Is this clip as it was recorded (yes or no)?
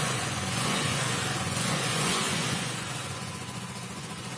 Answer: no